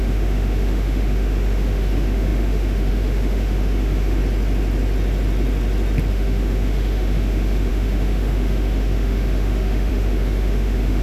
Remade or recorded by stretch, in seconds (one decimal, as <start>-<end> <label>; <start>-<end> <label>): 0.0-4.2 remade; 4.2-6.1 recorded; 6.1-11.0 remade